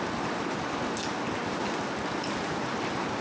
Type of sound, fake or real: real